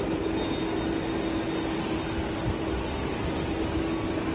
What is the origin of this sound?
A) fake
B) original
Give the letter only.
B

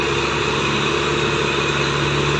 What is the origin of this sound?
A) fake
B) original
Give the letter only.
B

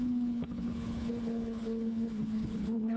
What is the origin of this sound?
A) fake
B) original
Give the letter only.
A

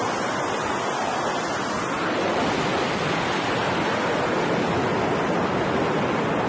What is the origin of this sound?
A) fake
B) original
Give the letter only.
B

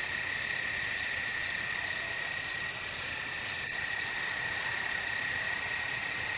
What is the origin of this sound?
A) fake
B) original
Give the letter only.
B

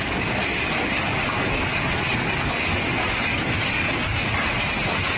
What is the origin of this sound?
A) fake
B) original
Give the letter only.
B